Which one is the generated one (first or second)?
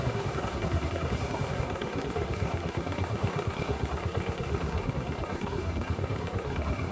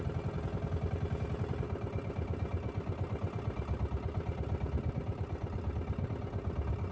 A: first